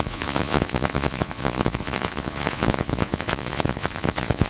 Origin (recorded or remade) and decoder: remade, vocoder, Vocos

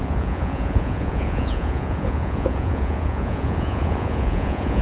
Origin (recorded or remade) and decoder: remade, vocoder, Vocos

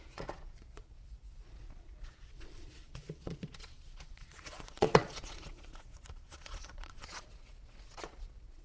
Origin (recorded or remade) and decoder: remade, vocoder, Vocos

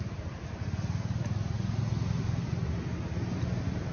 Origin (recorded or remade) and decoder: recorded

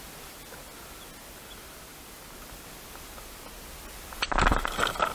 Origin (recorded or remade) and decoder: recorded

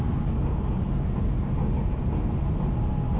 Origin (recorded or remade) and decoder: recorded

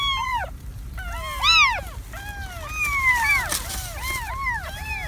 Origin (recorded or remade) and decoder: recorded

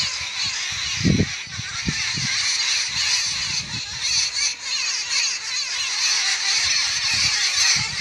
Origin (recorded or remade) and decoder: recorded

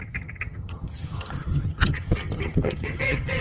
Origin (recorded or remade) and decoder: remade, vocoder, HiFi-GAN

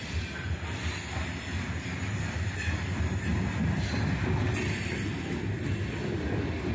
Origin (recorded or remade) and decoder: recorded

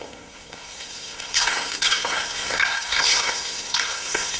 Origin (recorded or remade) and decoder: remade, codec, SNAC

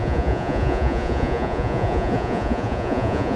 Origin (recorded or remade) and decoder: remade, vocoder, Vocos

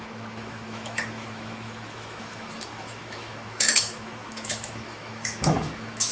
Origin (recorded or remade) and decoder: remade, autoencoder, DAC-VAE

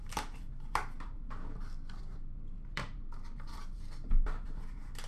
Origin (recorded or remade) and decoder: remade, vocoder, BigVGAN v2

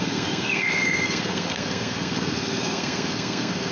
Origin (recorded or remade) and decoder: remade, codec, SNAC